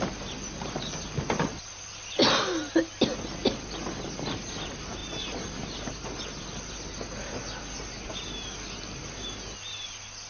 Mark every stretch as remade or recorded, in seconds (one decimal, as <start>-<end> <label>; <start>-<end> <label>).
0.0-10.3 recorded